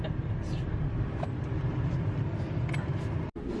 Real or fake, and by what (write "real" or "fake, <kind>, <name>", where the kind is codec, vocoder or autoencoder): real